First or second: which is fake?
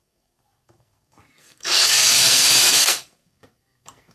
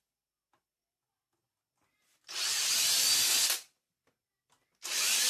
first